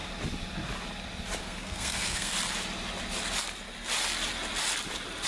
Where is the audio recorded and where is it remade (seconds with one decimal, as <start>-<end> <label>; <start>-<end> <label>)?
0.0-1.4 recorded; 1.4-2.3 remade; 2.3-5.3 recorded